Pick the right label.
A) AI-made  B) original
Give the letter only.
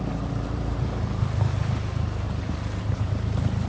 A